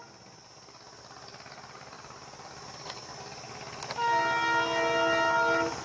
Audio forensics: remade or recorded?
recorded